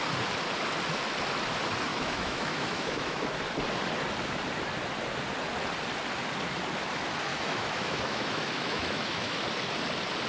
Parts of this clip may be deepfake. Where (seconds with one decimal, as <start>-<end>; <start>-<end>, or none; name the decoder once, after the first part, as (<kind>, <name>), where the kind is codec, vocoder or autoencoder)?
1.9-3.3 (autoencoder, DAC-VAE); 7.3-9.4

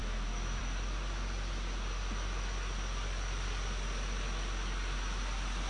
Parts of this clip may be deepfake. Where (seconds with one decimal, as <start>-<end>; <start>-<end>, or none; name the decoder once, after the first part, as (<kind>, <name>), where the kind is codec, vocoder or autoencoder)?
0.0-0.6 (autoencoder, DAC-VAE)

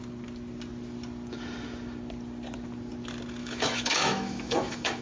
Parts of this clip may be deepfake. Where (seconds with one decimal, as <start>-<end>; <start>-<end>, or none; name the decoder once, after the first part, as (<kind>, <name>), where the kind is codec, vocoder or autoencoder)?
3.4-5.0 (autoencoder, DAC-VAE)

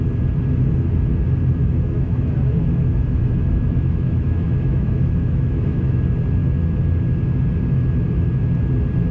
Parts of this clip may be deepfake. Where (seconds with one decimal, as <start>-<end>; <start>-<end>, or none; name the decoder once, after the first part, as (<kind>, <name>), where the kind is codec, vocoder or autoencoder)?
1.6-6.0 (autoencoder, DAC-VAE)

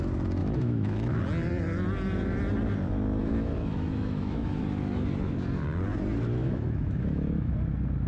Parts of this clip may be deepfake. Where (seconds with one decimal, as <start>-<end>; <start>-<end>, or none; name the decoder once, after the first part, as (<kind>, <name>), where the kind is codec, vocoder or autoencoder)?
0.4-1.2 (autoencoder, DAC-VAE); 3.2-4.6; 6.4-7.5